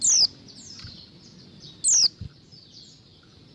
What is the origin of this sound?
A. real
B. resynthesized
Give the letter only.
A